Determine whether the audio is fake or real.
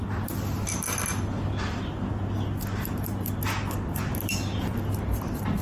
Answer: real